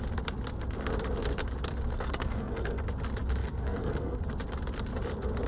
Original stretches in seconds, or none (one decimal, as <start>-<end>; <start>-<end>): 0.0-1.9; 2.8-3.4; 4.2-5.5